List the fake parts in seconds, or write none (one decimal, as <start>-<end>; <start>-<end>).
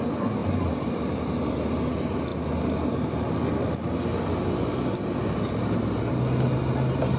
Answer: 0.4-1.5